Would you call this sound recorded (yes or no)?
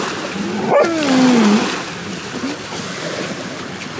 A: yes